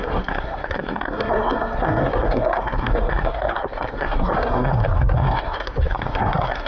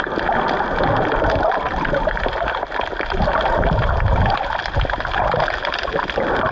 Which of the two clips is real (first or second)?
second